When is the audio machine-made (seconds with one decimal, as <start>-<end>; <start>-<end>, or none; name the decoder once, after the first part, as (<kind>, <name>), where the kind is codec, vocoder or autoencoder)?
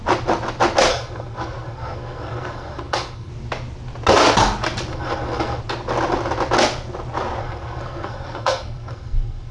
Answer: 0.9-3.3 (codec, SNAC); 4.9-5.6; 7.4-9.5